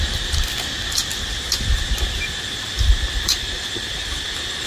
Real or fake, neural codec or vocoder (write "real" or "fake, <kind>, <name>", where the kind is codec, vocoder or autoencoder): real